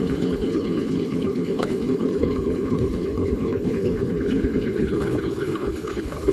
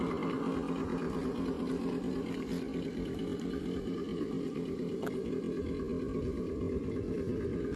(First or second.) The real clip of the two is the second